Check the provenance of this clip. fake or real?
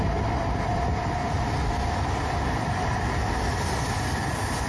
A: real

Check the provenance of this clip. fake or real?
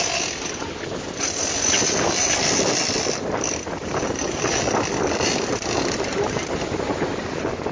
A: real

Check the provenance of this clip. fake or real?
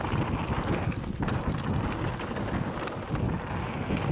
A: real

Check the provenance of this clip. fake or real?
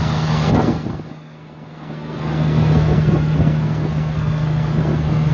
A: fake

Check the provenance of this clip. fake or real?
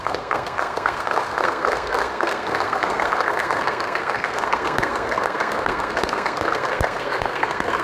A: fake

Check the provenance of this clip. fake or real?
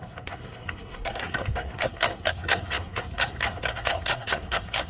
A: fake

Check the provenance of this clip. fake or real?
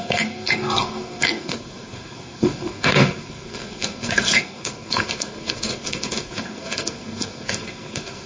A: fake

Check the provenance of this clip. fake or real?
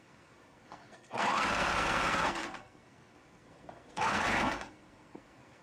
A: fake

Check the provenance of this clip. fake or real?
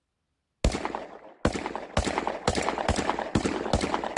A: real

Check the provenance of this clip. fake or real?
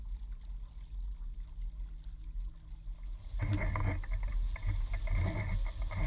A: real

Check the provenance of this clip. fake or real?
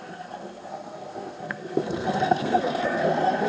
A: fake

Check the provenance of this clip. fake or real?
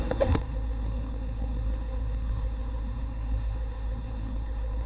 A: fake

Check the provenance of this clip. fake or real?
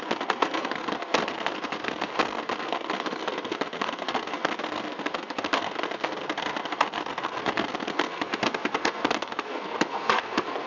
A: fake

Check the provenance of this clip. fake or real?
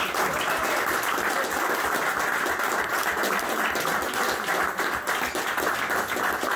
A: real